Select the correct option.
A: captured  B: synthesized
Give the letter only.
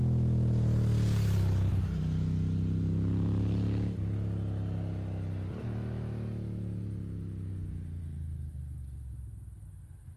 A